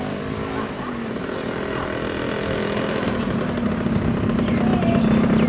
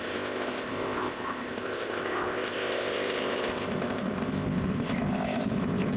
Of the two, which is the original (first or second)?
first